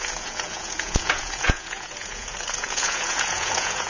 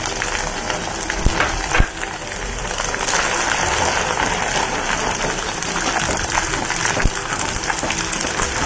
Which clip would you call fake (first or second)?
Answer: first